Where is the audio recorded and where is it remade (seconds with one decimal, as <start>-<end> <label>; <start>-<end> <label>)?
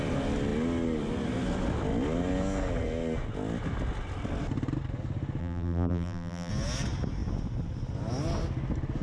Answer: 0.0-5.4 recorded; 5.4-6.5 remade; 6.5-9.0 recorded